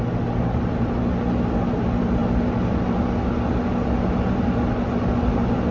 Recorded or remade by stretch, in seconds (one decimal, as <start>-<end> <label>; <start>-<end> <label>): 0.0-5.7 recorded